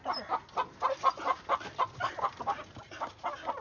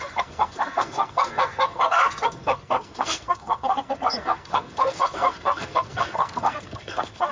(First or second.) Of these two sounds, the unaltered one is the first